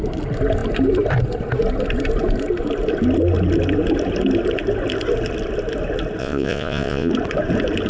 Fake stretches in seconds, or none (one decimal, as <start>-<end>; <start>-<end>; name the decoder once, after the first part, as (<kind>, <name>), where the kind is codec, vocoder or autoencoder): 6.2-7.1 (vocoder, Vocos)